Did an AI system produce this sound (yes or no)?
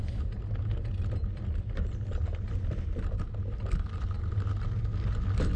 no